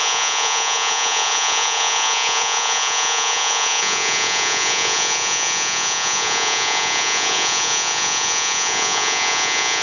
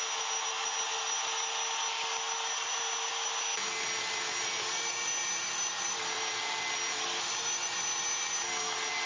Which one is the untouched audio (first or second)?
second